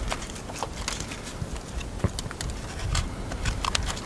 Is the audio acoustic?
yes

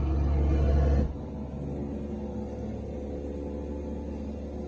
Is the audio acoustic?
yes